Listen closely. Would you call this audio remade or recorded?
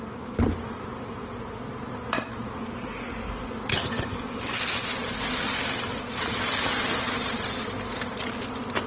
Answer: recorded